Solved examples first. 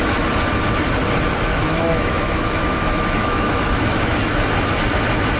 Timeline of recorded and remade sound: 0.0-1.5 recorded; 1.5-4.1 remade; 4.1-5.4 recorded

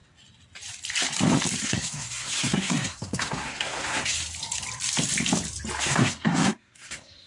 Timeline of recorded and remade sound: 0.0-1.6 recorded; 1.6-4.2 remade; 4.2-5.8 recorded; 5.8-7.3 remade

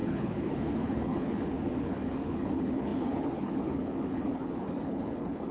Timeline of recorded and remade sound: 0.0-5.5 remade